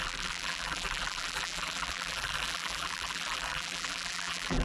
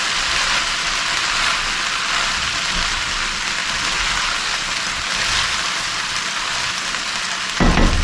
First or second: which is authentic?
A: second